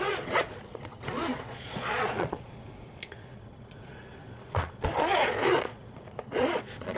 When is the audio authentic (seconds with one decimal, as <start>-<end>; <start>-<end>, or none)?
none